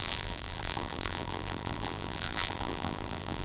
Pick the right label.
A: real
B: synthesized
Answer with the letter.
B